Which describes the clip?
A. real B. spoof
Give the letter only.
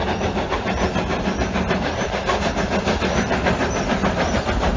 A